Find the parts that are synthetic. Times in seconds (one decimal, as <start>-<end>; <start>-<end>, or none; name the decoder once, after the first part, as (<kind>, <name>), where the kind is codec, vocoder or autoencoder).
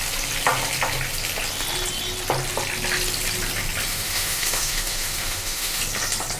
3.9-5.8 (autoencoder, DAC-VAE)